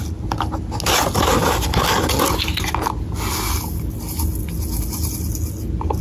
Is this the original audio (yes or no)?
yes